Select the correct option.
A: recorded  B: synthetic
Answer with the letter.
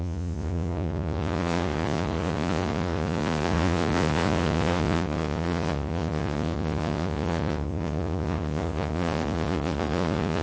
B